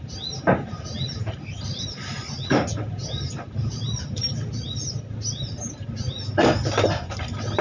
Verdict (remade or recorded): recorded